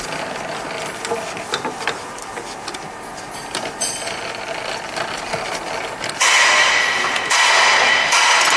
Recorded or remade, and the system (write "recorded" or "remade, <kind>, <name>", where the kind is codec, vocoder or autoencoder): recorded